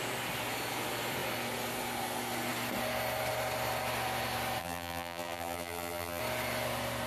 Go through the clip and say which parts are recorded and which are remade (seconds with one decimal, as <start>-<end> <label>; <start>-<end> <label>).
0.0-4.6 recorded; 4.6-6.2 remade; 6.2-7.1 recorded